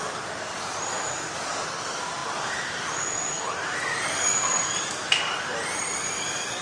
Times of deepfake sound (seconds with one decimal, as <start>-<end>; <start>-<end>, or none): none